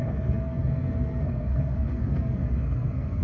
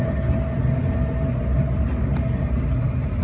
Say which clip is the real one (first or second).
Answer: second